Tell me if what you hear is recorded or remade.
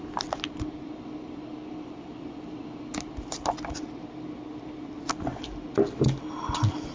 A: recorded